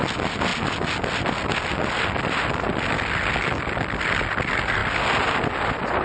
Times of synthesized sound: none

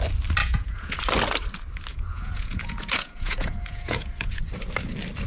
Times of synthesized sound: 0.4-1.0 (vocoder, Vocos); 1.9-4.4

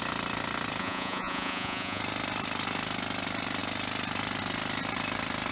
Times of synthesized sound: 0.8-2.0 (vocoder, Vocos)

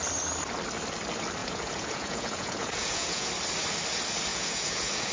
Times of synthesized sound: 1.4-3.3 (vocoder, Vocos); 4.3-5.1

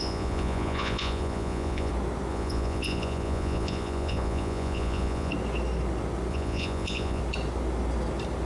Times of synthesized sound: 0.0-1.9 (vocoder, Vocos); 2.3-5.3; 6.3-7.2